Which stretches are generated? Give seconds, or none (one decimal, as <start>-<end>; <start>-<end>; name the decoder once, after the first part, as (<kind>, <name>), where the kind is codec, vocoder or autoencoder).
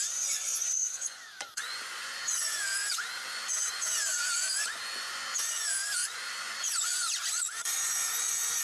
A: 0.0-8.6 (vocoder, Vocos)